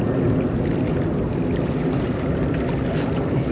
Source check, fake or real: real